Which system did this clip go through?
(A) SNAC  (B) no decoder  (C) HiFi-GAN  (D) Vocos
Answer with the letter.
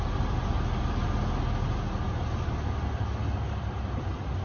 B